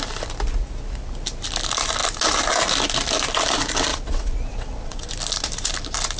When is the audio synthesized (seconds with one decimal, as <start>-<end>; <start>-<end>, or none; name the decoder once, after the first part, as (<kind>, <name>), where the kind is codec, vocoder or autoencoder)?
3.9-5.1 (vocoder, WaveNeXt)